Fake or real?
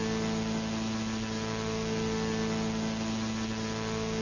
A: real